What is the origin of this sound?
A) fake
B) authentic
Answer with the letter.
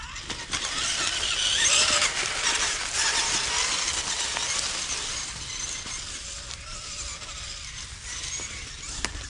B